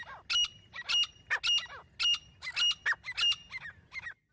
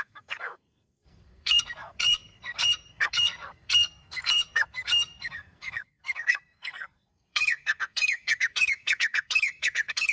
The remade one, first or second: second